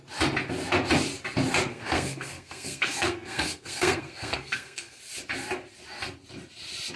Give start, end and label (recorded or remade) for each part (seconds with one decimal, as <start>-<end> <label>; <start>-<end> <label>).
0.0-1.7 recorded; 1.7-5.0 remade; 5.0-7.0 recorded